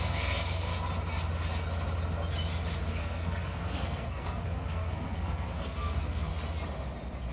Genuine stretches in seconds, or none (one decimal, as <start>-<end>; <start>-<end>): 0.7-2.9; 6.3-7.3